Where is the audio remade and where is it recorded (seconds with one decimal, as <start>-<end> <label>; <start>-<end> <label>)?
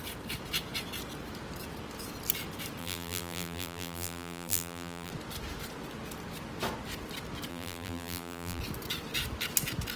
0.0-2.8 recorded; 2.8-5.1 remade; 5.1-7.5 recorded; 7.5-8.6 remade; 8.6-10.0 recorded